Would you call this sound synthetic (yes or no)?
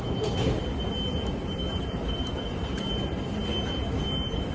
no